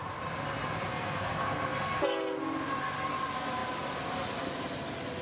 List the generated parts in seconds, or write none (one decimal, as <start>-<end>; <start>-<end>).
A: 0.9-2.0